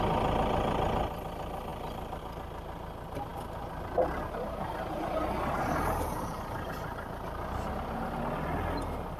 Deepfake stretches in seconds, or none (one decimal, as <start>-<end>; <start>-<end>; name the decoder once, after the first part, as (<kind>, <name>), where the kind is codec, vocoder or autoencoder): none